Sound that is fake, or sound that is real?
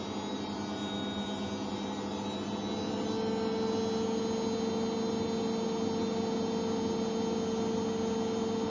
real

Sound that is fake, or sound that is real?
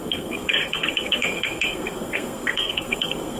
fake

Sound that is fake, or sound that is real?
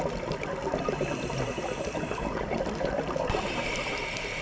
real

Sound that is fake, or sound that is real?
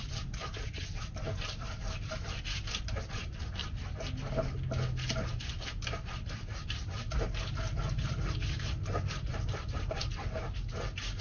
real